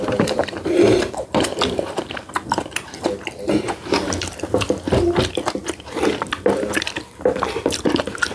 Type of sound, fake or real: fake